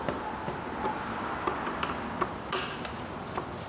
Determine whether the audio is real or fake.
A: real